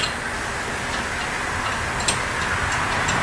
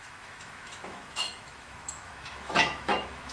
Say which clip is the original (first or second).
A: first